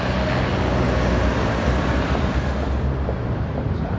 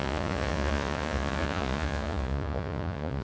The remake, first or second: second